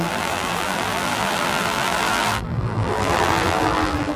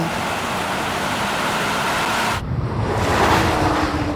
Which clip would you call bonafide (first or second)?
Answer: second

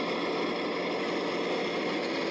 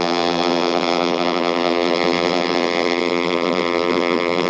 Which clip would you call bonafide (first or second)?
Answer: first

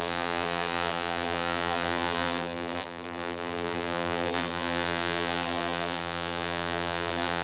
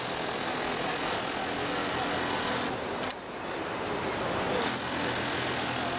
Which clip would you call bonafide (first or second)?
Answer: second